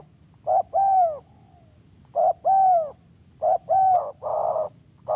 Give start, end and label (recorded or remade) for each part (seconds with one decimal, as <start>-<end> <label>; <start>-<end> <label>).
0.0-5.2 recorded